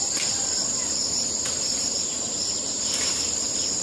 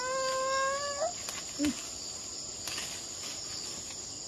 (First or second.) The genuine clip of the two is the second